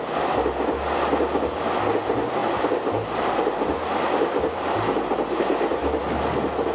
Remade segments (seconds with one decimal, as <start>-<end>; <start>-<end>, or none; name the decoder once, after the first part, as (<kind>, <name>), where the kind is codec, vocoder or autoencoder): 2.4-6.0 (vocoder, BigVGAN v2)